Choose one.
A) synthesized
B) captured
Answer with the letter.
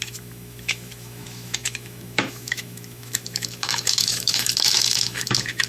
A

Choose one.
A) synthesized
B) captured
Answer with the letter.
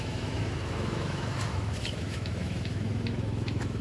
A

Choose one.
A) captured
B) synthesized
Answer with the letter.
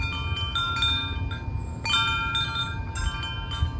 A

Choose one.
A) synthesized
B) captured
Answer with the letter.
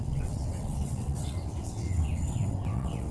A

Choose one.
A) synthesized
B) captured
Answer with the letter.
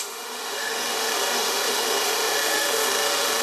A